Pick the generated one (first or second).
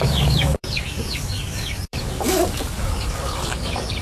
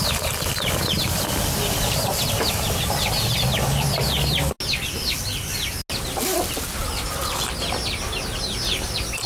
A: first